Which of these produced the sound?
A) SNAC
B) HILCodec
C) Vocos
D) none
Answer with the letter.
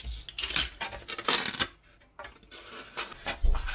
D